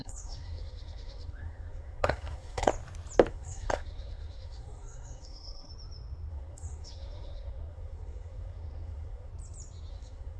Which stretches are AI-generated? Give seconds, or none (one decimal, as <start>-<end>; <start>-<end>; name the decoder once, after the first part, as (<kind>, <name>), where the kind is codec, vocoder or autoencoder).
0.0-2.7 (codec, SNAC); 3.3-5.7; 6.3-9.3; 9.9-10.4